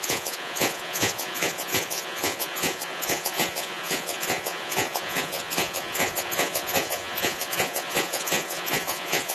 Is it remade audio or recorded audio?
remade